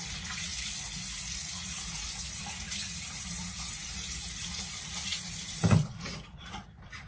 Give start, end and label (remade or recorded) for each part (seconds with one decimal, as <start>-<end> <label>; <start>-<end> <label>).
0.0-0.5 remade; 0.5-1.3 recorded; 1.3-7.1 remade